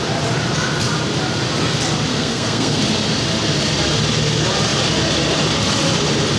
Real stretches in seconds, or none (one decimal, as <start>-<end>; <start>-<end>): 0.0-2.1; 2.8-6.4